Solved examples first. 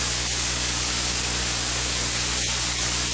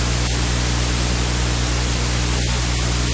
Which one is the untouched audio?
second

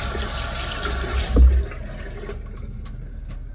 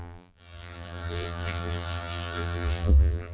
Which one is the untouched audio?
first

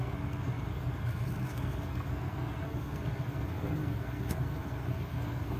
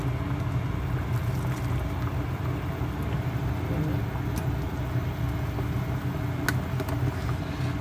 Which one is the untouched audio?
second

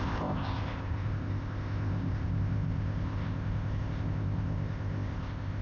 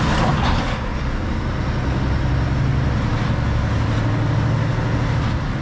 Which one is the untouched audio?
second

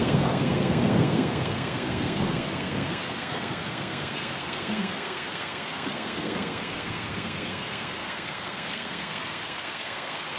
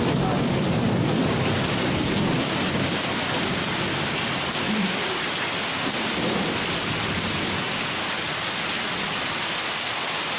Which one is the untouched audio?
second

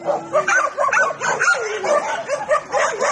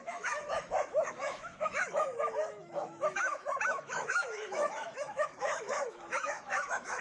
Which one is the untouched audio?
first